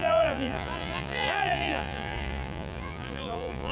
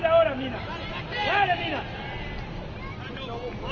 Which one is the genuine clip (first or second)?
second